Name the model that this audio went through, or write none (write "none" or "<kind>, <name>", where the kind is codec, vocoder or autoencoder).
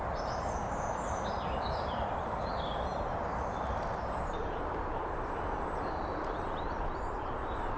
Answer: vocoder, BigVGAN v2